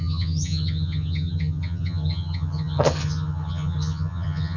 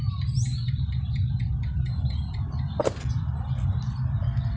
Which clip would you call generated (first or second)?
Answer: first